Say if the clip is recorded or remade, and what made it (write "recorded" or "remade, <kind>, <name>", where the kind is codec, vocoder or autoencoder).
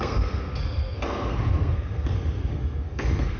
remade, codec, SNAC